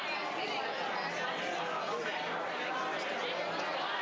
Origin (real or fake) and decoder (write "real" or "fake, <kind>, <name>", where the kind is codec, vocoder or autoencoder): real